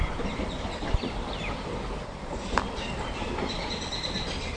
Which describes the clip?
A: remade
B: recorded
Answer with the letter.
B